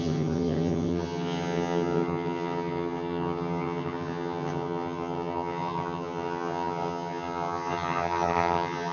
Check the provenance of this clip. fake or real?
fake